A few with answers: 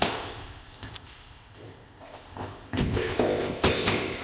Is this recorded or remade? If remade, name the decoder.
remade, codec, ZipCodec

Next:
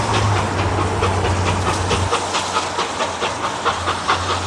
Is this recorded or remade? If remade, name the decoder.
recorded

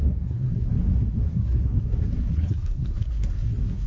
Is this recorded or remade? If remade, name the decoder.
remade, codec, SNAC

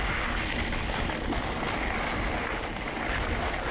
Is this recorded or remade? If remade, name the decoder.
recorded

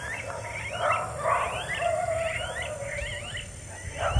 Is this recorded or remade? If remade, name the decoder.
recorded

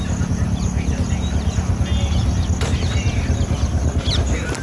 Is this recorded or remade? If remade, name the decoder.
recorded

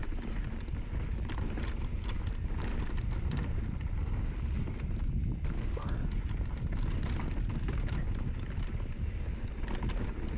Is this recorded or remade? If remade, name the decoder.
recorded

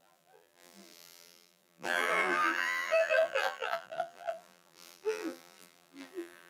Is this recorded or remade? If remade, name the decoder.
remade, vocoder, BigVGAN v2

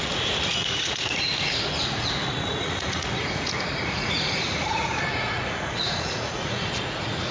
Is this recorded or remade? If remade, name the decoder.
remade, vocoder, Vocos